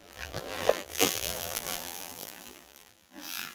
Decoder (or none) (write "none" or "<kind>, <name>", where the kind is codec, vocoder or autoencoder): vocoder, BigVGAN v2